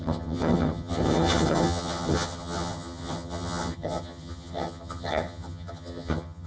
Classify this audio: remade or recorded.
remade